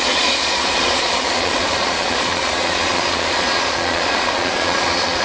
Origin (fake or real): fake